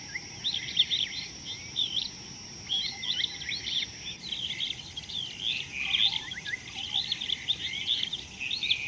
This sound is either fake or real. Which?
real